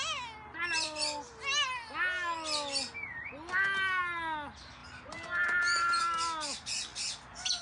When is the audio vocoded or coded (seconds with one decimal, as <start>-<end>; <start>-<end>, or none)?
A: none